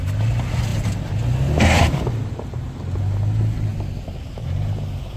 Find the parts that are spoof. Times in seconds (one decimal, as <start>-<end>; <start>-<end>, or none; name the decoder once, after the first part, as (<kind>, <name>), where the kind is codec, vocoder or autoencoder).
none